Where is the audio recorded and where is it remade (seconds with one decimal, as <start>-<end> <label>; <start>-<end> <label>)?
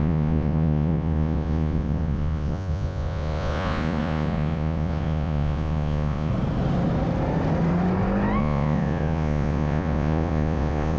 0.0-6.3 remade; 6.3-8.4 recorded; 8.4-11.0 remade